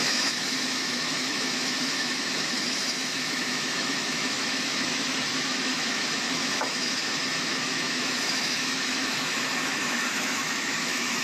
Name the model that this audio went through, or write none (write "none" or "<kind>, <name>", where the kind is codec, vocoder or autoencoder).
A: autoencoder, DAC-VAE